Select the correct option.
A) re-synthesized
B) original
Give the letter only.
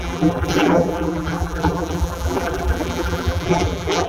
A